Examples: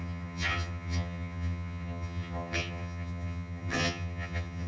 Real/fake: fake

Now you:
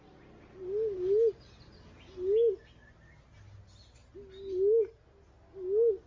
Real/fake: real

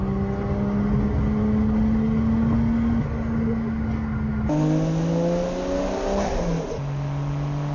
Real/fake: real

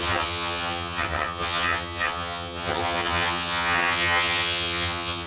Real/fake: fake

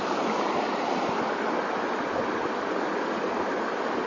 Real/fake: real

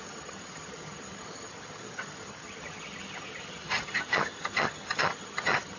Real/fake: fake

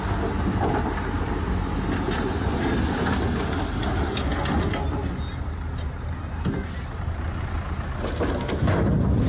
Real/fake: real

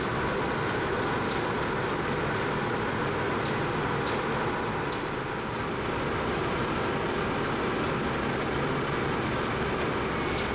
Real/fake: real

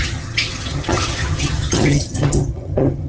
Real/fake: fake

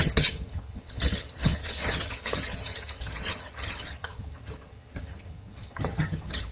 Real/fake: fake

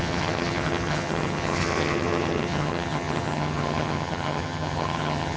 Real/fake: fake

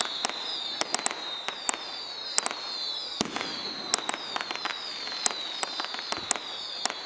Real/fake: real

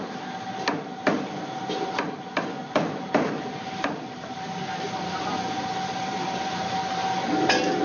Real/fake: real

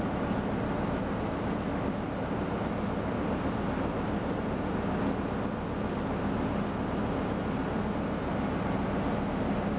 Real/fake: real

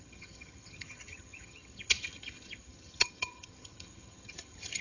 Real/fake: fake